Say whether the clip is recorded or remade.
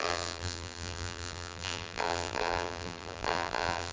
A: remade